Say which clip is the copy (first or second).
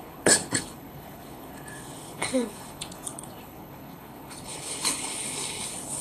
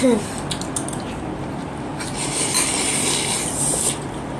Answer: first